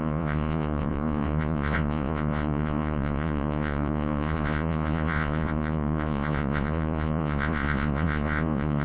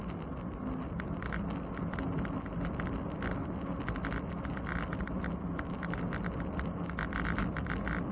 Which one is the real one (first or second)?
second